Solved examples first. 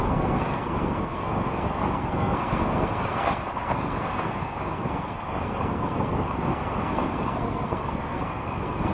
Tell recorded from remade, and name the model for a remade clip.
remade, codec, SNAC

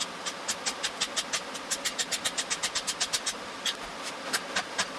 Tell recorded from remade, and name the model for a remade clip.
recorded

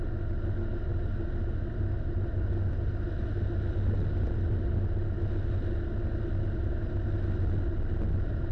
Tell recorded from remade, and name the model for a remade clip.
recorded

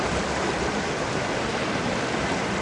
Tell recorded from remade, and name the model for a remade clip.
recorded